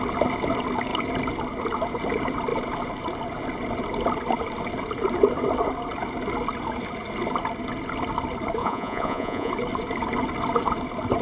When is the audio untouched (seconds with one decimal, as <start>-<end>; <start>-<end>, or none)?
0.0-8.6; 9.5-11.2